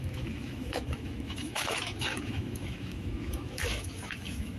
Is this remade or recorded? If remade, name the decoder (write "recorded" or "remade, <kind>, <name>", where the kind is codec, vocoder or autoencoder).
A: remade, autoencoder, DAC-VAE